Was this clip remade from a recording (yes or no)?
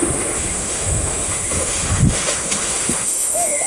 yes